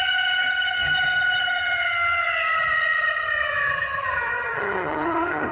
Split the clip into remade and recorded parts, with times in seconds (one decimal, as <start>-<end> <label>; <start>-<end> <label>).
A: 0.0-5.5 remade